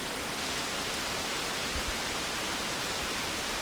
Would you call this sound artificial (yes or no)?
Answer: no